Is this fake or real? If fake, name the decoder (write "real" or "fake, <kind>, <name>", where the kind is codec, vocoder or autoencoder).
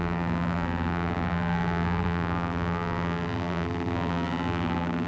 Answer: fake, vocoder, BigVGAN v2